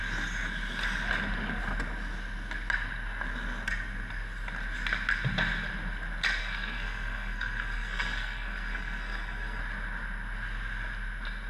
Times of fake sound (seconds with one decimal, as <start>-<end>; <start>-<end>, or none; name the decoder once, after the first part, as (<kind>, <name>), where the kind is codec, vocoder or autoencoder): 6.4-9.6 (codec, SNAC)